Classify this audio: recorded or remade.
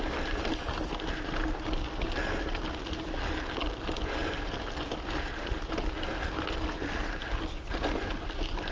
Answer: recorded